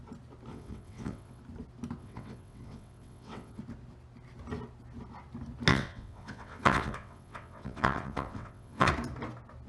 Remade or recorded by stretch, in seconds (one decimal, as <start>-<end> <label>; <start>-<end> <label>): 0.0-0.5 recorded; 0.5-1.4 remade; 1.4-2.0 recorded; 2.0-3.6 remade; 3.6-5.7 recorded; 5.7-8.9 remade; 8.9-9.7 recorded

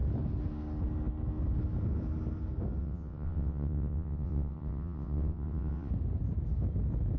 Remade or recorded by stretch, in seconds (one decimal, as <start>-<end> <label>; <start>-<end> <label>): 0.0-2.8 recorded; 2.8-5.9 remade; 5.9-7.2 recorded

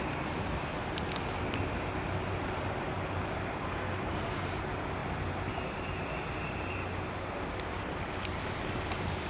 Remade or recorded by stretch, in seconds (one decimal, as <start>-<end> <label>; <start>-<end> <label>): 0.0-9.3 recorded

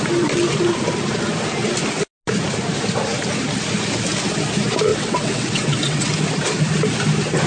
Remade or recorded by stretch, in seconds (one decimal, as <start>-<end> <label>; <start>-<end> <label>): 0.0-4.9 recorded; 4.9-6.1 remade; 6.1-7.5 recorded

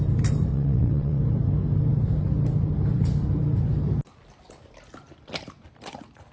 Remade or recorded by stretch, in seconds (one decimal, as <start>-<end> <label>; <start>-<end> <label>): 0.0-0.5 recorded; 0.5-1.2 remade; 1.2-6.3 recorded